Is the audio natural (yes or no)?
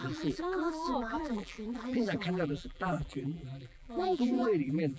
no